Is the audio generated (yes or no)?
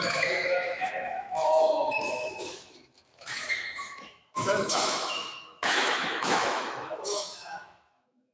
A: yes